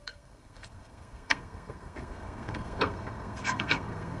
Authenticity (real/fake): fake